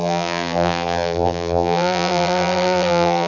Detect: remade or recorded remade